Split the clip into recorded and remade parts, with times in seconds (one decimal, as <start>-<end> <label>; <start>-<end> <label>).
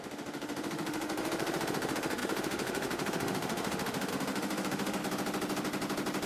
0.0-5.0 remade; 5.0-6.3 recorded